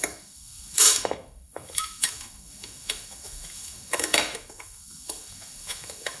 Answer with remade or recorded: remade